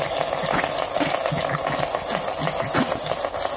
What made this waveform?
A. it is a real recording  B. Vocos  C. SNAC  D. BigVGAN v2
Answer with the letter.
A